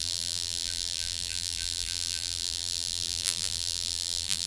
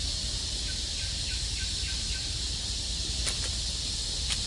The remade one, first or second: first